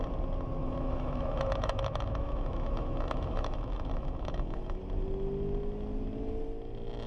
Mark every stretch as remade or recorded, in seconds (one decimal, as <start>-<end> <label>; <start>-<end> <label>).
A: 0.0-0.6 recorded; 0.6-4.8 remade; 4.8-7.1 recorded